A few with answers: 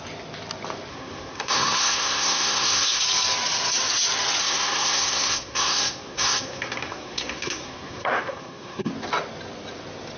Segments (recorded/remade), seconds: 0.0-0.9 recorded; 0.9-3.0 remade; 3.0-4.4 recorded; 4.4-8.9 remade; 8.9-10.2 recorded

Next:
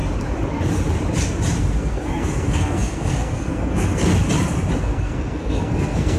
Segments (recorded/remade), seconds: 0.0-1.6 recorded; 1.6-4.1 remade; 4.1-4.8 recorded; 4.8-6.2 remade

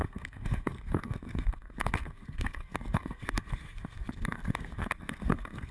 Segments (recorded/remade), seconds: 0.0-5.7 remade

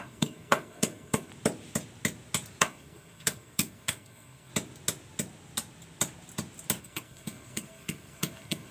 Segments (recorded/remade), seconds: 0.0-1.3 remade; 1.3-2.6 recorded; 2.6-4.5 remade; 4.5-6.8 recorded; 6.8-8.7 remade

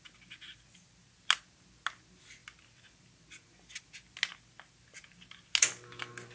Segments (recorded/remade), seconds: 0.0-6.3 recorded

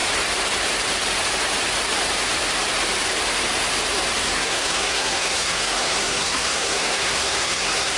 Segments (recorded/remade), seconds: 0.0-4.2 recorded; 4.2-8.0 remade